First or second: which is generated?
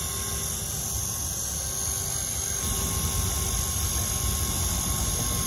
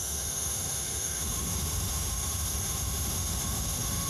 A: second